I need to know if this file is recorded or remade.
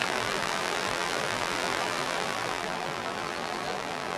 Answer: remade